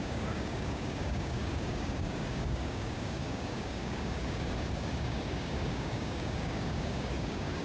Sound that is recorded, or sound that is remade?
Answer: remade